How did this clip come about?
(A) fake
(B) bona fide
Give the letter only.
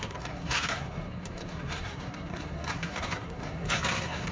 A